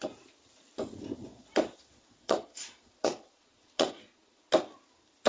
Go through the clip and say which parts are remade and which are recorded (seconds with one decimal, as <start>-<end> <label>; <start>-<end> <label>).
0.0-1.2 recorded; 1.2-4.4 remade; 4.4-5.3 recorded